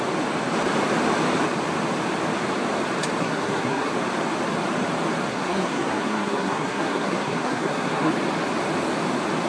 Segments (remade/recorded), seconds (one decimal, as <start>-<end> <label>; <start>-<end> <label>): 0.0-3.2 recorded; 3.2-3.9 remade; 3.9-5.3 recorded; 5.3-8.1 remade; 8.1-9.5 recorded